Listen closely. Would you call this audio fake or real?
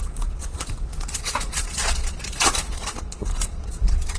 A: fake